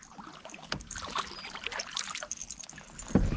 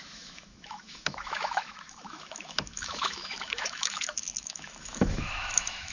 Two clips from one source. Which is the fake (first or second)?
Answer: second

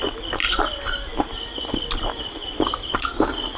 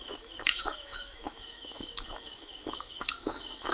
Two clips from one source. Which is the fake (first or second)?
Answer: second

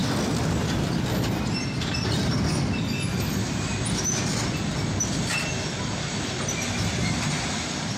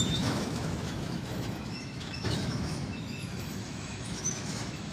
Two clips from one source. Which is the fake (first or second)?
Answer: second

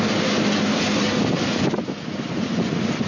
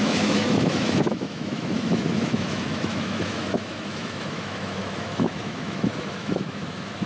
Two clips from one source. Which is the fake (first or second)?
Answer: second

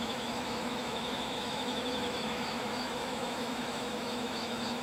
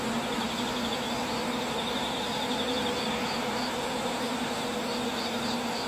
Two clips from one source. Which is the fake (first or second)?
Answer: first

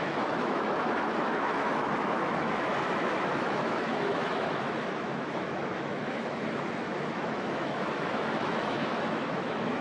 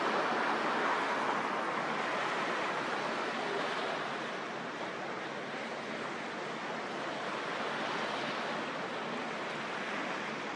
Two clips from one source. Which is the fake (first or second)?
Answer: first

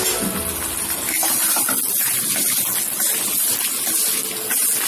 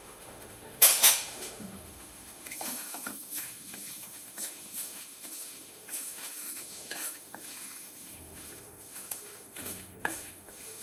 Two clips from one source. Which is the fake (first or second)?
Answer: second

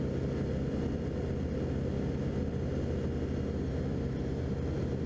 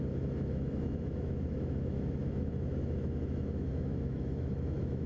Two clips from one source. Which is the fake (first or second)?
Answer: second